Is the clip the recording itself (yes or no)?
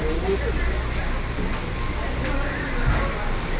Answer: yes